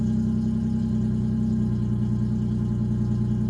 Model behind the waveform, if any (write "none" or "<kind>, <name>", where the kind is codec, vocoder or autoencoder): none